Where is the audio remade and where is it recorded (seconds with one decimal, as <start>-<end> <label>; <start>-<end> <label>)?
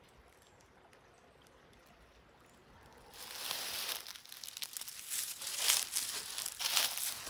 0.0-7.3 recorded